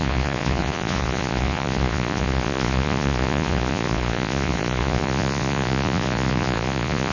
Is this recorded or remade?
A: remade